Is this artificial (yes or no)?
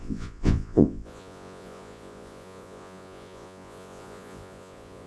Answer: yes